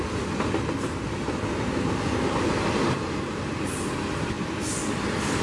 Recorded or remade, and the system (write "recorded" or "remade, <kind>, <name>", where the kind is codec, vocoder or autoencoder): recorded